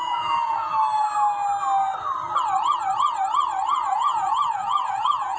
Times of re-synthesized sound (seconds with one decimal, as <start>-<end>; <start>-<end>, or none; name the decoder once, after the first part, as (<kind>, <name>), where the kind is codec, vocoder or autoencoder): 0.0-0.7 (vocoder, Vocos); 3.9-5.4